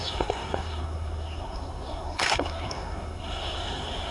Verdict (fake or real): fake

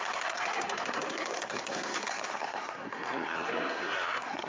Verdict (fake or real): fake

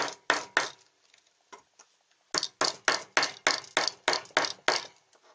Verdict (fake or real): real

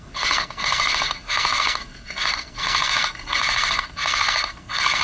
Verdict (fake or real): fake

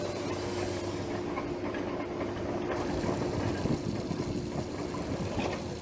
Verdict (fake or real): real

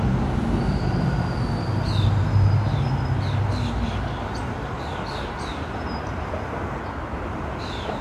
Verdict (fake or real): real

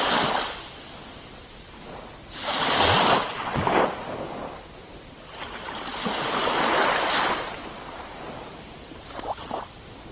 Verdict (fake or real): real